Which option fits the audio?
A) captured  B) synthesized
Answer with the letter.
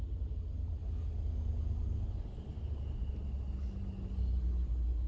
A